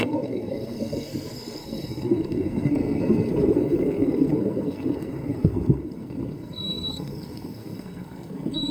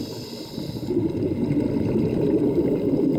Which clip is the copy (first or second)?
first